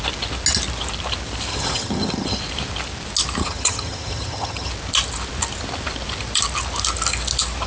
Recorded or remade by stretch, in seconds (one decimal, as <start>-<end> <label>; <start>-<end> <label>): 0.0-1.5 recorded; 1.5-2.4 remade; 2.4-3.4 recorded; 3.4-4.7 remade; 4.7-7.7 recorded

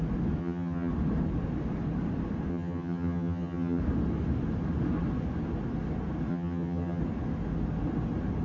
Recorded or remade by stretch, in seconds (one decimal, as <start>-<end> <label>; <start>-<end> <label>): 0.0-0.4 recorded; 0.4-0.9 remade; 0.9-2.5 recorded; 2.5-3.8 remade; 3.8-6.3 recorded; 6.3-7.0 remade; 7.0-8.4 recorded